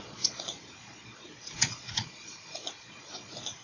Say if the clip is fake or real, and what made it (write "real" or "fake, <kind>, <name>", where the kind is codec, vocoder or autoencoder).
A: fake, vocoder, Vocos